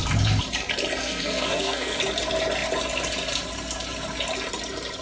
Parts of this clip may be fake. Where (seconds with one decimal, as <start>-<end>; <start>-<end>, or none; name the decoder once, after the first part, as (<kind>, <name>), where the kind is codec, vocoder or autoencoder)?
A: 1.0-2.0 (codec, SNAC)